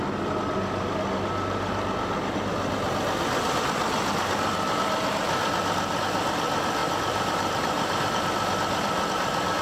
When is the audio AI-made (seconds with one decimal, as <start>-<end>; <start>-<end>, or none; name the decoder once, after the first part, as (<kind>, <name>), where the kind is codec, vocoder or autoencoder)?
6.8-8.2 (vocoder, BigVGAN v2)